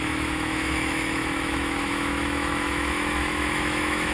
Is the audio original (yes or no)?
no